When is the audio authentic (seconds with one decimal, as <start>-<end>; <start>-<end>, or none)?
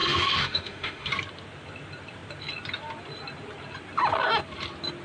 1.1-5.0